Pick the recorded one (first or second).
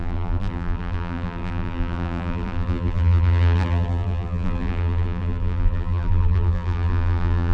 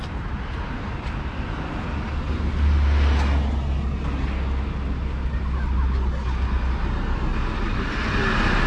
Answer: second